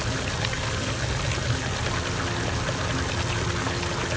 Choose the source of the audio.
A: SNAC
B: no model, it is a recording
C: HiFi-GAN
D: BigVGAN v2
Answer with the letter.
B